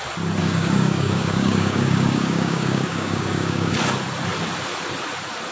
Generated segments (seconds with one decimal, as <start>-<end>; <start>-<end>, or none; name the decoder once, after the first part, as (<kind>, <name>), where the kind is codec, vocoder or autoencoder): 0.4-3.7 (codec, DAC)